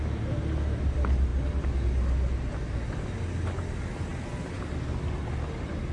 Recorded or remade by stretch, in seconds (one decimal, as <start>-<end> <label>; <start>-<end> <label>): 0.0-5.9 recorded